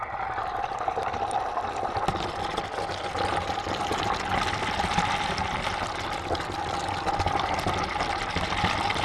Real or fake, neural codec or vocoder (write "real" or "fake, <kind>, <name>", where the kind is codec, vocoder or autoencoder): real